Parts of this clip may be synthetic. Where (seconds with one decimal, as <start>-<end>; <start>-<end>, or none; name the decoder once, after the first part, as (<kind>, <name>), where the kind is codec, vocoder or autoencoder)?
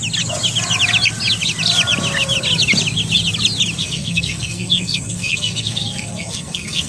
3.8-6.9 (codec, SNAC)